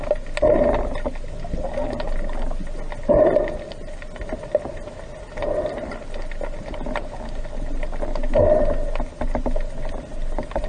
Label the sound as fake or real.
real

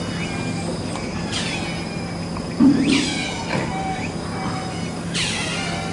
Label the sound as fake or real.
real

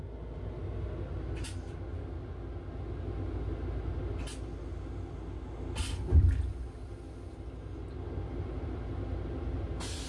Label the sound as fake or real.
real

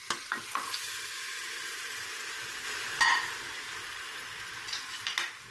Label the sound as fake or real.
real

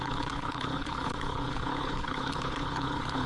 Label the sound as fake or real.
fake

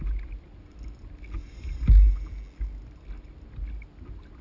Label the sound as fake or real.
real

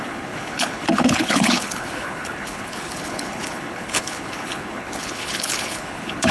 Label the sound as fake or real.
fake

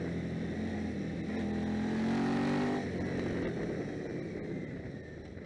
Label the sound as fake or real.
real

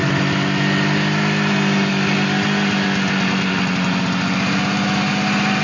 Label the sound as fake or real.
real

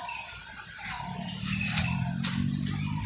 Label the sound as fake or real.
real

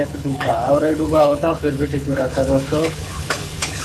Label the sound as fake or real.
fake